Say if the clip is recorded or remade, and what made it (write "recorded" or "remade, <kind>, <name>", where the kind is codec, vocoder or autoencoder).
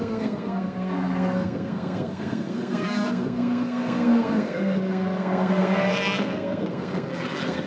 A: remade, codec, SNAC